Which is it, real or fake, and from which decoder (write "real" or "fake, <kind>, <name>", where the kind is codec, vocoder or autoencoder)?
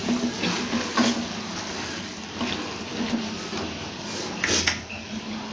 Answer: real